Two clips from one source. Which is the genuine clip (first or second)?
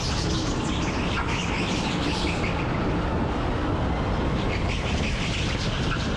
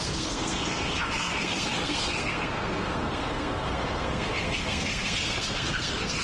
first